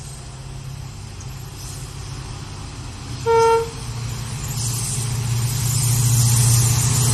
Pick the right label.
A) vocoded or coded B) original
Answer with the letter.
B